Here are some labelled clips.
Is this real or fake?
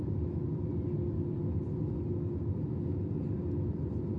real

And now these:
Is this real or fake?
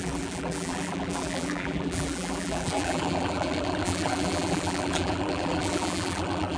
fake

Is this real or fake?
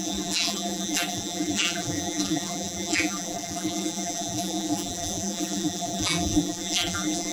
fake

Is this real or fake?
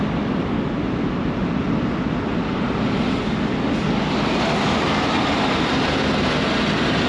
real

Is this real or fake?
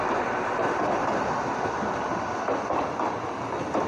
real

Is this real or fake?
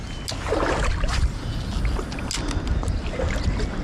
real